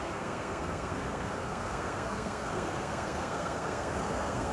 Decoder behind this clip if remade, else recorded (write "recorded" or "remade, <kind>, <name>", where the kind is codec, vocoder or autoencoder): remade, codec, SNAC